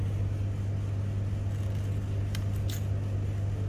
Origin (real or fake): real